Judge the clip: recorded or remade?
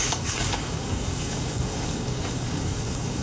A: remade